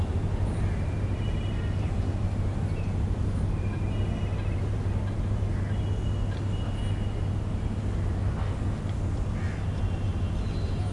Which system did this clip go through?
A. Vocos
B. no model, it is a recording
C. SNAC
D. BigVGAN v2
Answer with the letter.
B